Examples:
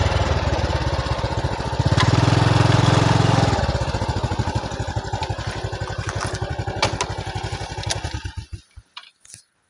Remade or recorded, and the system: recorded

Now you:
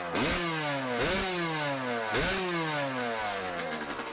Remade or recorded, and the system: recorded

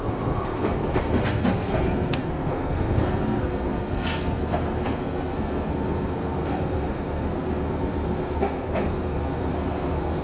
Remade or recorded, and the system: remade, codec, SNAC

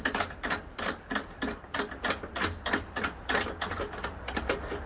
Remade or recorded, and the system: recorded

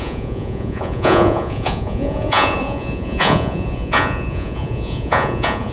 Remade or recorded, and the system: remade, vocoder, Vocos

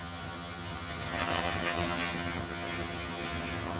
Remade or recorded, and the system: remade, vocoder, HiFi-GAN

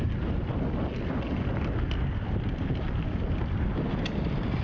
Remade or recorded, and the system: recorded